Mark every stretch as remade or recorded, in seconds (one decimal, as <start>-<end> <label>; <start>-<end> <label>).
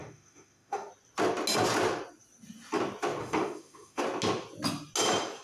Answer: 0.0-0.9 remade; 0.9-3.2 recorded; 3.2-4.0 remade; 4.0-5.4 recorded